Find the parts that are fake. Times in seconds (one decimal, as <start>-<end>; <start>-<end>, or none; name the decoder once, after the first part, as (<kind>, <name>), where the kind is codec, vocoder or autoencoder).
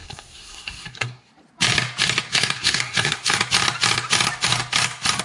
0.0-1.3 (codec, SNAC); 2.3-3.3